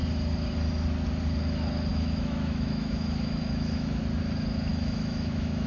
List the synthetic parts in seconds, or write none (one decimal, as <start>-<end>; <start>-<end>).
1.9-4.0; 4.7-5.7